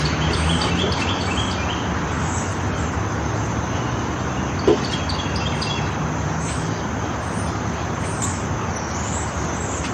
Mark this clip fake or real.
real